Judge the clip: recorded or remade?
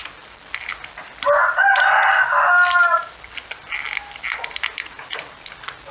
recorded